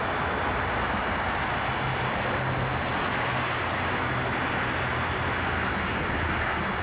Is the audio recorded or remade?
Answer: recorded